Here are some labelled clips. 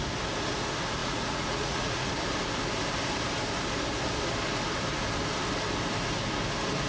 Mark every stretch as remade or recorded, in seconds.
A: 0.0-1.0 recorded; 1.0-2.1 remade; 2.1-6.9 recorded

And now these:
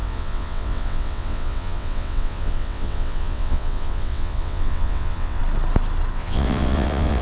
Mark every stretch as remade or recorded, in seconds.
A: 0.0-5.4 remade; 5.4-6.1 recorded; 6.1-7.2 remade

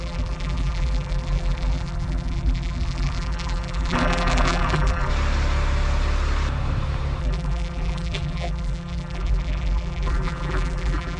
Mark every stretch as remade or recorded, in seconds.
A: 0.0-5.1 remade; 5.1-7.2 recorded; 7.2-11.2 remade